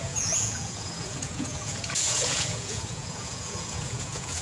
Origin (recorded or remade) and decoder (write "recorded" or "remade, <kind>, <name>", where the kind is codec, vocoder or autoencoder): remade, vocoder, Vocos